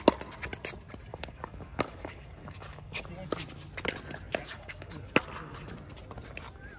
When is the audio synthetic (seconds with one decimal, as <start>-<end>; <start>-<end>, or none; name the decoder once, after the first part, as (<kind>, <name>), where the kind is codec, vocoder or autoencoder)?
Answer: 1.1-3.0 (codec, DAC); 4.5-5.1